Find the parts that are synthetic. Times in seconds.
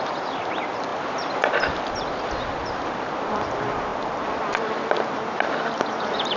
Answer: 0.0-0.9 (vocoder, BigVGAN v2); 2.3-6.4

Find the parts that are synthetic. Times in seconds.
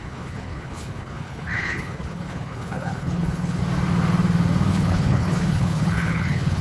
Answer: 0.0-3.6 (codec, HILCodec); 4.7-6.6